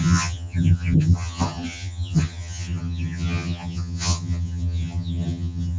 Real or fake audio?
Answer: fake